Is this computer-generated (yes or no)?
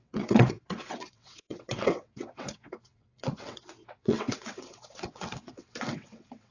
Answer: yes